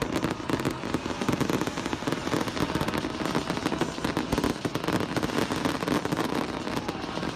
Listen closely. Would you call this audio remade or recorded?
recorded